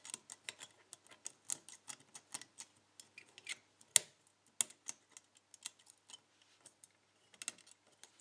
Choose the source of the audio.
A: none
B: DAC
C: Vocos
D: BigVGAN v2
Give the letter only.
A